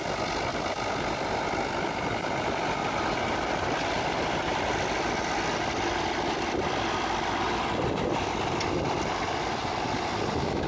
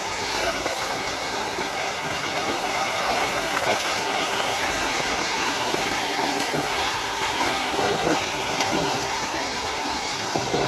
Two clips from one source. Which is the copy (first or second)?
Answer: second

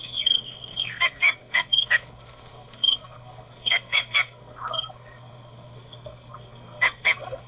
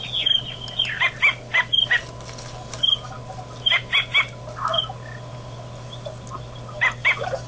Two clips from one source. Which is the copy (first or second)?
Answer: first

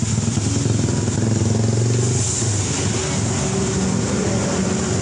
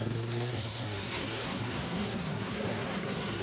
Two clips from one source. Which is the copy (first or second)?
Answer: second